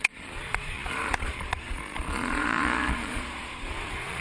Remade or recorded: remade